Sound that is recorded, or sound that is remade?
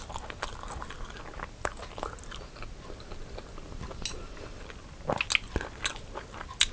recorded